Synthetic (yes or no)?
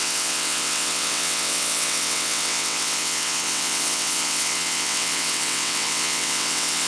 yes